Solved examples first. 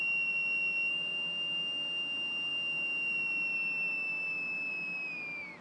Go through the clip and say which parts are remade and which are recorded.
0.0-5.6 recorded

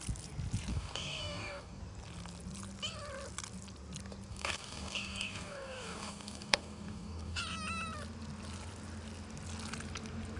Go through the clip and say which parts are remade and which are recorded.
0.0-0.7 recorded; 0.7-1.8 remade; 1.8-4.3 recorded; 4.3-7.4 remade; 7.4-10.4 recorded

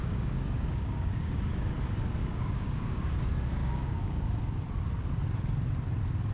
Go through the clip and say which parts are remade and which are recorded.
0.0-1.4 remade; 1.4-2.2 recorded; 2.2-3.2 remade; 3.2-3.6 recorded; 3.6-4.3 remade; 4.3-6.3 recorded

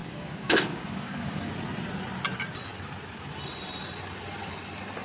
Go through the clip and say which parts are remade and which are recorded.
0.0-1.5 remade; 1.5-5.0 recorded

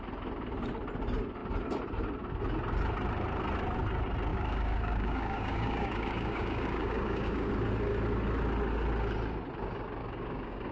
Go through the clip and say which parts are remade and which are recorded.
0.0-4.3 recorded; 4.3-7.5 remade; 7.5-10.0 recorded; 10.0-10.7 remade

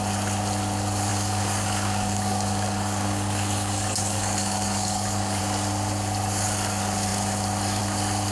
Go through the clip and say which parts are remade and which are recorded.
0.0-1.1 recorded; 1.1-5.4 remade; 5.4-8.3 recorded

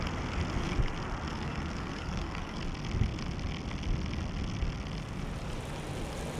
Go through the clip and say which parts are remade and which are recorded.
0.0-1.3 recorded; 1.3-2.6 remade; 2.6-6.4 recorded